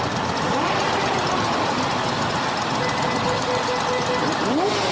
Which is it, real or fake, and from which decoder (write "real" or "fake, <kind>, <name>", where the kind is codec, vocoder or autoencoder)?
real